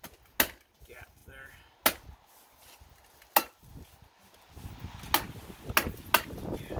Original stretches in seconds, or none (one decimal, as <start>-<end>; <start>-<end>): 0.0-6.8